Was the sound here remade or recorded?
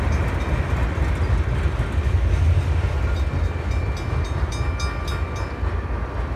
recorded